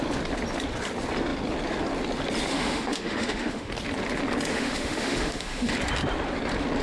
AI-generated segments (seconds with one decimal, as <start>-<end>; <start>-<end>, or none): 2.5-3.7; 4.5-5.7